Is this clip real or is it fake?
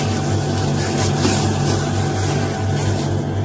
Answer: real